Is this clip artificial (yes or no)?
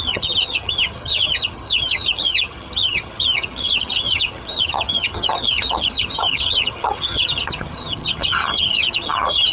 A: yes